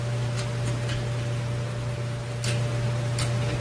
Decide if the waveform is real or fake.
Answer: real